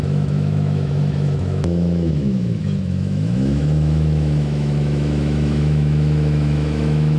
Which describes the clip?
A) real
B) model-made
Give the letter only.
B